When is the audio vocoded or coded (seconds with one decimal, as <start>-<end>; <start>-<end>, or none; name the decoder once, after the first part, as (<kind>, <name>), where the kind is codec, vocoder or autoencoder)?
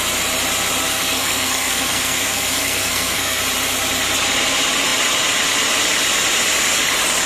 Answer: 0.9-3.4 (codec, SNAC)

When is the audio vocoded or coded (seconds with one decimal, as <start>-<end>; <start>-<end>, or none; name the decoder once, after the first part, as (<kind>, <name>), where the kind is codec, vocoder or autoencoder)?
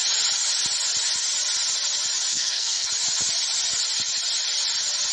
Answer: 2.3-2.9 (codec, SNAC)